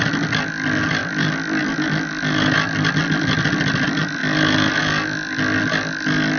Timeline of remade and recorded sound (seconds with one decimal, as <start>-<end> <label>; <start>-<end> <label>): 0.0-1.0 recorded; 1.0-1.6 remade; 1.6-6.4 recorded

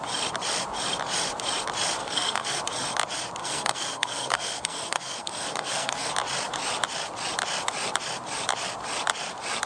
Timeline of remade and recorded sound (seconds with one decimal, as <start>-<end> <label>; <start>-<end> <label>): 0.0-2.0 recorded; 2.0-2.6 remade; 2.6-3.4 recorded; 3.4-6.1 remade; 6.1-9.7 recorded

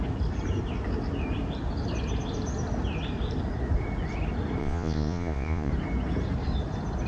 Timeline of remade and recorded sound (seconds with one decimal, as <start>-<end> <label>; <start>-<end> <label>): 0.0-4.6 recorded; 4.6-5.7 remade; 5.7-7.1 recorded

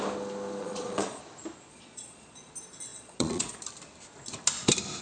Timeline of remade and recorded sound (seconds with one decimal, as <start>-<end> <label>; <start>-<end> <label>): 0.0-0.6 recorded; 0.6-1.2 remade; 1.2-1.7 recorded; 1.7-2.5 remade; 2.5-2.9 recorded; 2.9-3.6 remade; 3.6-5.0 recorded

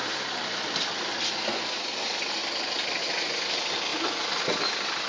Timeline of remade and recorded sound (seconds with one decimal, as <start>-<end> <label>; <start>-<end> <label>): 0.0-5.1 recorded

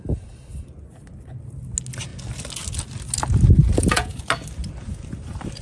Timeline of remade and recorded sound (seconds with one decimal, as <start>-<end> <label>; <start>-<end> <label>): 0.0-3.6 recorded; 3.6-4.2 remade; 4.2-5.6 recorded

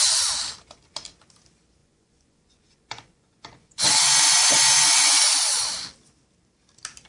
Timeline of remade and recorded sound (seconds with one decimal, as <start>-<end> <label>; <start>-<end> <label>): 0.0-1.8 recorded; 1.8-5.2 remade; 5.2-7.1 recorded